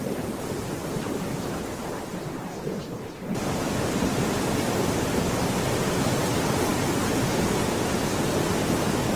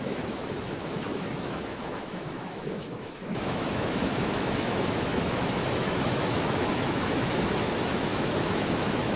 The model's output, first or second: second